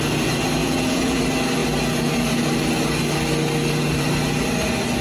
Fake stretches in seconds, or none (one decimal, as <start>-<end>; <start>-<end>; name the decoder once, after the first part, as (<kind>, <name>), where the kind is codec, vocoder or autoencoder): 0.6-1.2 (vocoder, Vocos)